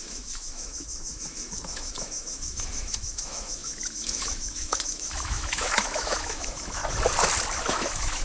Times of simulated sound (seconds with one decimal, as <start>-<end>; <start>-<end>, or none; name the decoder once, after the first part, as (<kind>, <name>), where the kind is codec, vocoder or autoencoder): 0.0-6.8 (autoencoder, DAC-VAE); 7.6-8.2